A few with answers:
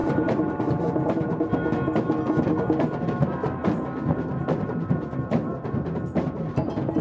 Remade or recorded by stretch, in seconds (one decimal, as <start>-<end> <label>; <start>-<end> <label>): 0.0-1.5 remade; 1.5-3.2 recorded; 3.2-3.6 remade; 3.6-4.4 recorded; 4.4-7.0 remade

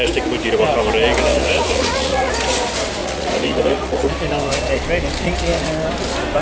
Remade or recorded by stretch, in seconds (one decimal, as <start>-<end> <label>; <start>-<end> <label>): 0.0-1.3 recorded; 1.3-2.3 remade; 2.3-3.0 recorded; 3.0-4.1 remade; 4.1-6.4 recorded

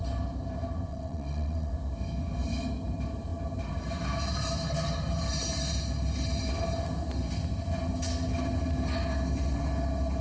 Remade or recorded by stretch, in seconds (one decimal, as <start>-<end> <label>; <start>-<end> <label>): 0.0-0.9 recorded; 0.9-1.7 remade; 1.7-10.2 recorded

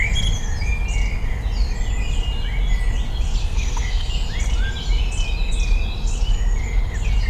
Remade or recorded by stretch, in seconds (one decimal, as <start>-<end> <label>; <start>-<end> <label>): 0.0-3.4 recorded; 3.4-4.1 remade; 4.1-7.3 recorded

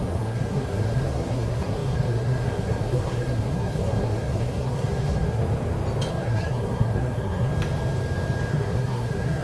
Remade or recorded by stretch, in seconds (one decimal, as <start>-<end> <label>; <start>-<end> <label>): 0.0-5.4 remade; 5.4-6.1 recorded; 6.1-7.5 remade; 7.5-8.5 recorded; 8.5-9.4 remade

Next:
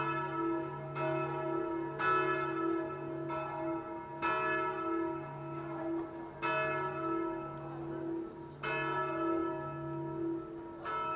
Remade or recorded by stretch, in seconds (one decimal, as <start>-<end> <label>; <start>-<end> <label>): 0.0-11.2 recorded